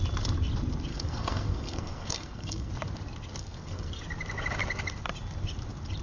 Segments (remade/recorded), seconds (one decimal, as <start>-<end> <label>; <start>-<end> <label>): 0.0-0.9 recorded; 0.9-2.7 remade; 2.7-3.4 recorded; 3.4-4.0 remade; 4.0-6.0 recorded